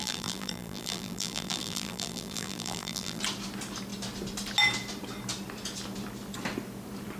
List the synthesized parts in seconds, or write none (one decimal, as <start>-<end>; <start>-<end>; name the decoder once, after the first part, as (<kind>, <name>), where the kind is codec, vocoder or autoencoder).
0.0-3.2 (vocoder, BigVGAN v2)